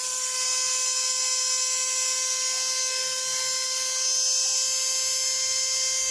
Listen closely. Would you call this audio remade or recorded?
recorded